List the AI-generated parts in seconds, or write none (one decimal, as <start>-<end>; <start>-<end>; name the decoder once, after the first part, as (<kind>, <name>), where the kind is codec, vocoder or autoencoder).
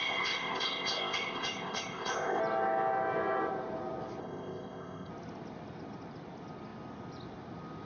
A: 0.0-2.4 (codec, ZipCodec); 4.2-5.1